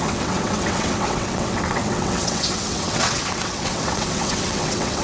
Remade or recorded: remade